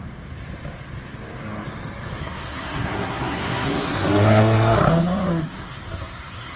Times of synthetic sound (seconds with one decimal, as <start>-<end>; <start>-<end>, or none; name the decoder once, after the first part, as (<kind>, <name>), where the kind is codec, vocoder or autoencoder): 2.2-6.6 (codec, SNAC)